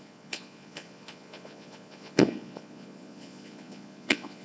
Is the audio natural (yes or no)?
no